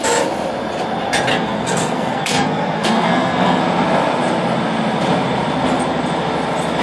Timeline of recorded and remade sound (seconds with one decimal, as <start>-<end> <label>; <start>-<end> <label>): 0.0-1.3 recorded; 1.3-3.6 remade; 3.6-6.8 recorded